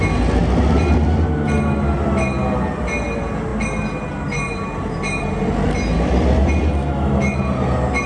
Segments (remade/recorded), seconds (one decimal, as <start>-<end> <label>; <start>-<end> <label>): 0.0-6.8 recorded; 6.8-7.4 remade; 7.4-8.1 recorded

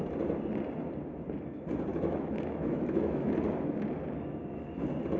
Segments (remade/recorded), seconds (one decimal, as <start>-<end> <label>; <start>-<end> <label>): 0.0-1.9 recorded; 1.9-3.3 remade; 3.3-5.2 recorded

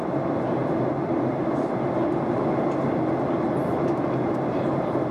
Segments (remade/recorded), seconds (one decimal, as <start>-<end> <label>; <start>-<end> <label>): 0.0-5.1 recorded

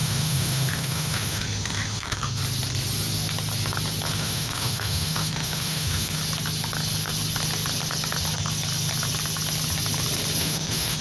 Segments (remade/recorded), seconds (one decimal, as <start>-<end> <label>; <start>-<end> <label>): 0.0-2.4 remade; 2.4-4.1 recorded; 4.1-6.2 remade; 6.2-10.4 recorded; 10.4-11.0 remade

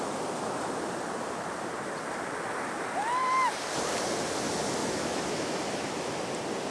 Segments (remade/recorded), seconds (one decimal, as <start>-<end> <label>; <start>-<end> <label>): 0.0-4.8 recorded; 4.8-5.6 remade; 5.6-6.7 recorded

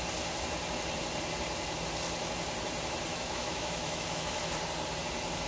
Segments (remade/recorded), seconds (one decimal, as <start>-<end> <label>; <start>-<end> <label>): 0.0-3.1 recorded; 3.1-4.4 remade; 4.4-5.5 recorded

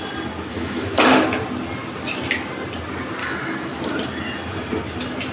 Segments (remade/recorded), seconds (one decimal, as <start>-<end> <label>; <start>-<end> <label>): 0.0-0.5 recorded; 0.5-1.0 remade; 1.0-3.2 recorded; 3.2-3.8 remade; 3.8-5.3 recorded